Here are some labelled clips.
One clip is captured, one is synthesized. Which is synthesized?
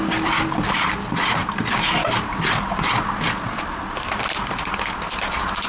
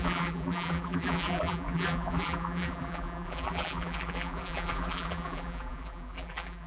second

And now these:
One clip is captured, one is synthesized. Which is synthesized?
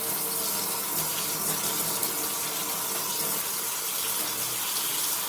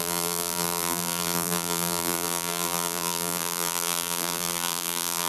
second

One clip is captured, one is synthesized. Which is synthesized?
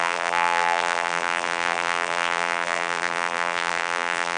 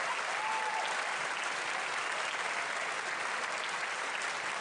first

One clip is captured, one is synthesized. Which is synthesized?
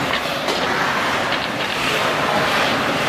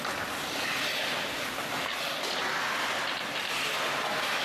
first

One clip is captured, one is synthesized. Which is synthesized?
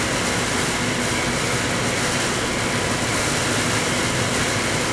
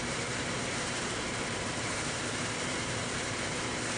second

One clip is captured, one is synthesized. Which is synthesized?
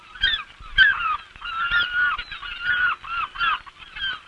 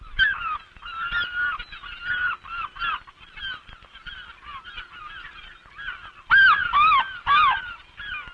first